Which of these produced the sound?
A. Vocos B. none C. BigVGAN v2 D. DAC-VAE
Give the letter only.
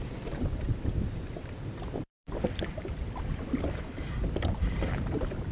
C